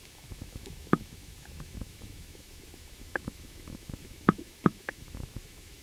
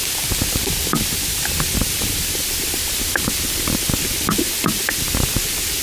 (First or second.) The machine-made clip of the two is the first